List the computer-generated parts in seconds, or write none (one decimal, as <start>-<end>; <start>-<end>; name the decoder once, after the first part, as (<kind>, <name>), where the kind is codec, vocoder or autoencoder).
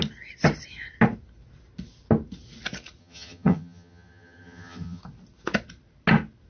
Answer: 3.0-5.0 (vocoder, HiFi-GAN)